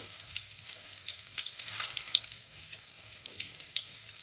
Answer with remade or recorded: remade